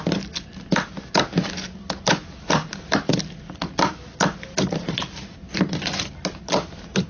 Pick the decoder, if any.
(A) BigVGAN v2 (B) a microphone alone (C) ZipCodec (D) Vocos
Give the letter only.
B